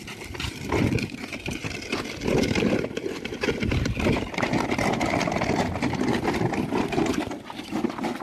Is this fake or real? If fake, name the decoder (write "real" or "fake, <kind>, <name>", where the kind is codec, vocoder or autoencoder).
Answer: real